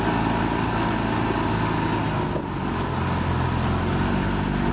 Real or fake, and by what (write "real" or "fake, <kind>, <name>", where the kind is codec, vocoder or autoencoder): real